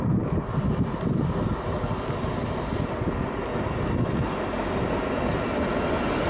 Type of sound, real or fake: real